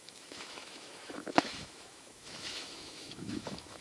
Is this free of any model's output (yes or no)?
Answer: no